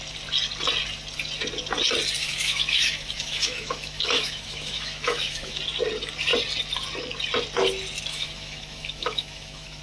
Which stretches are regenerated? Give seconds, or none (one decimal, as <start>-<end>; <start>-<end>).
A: 2.2-5.6; 8.1-9.8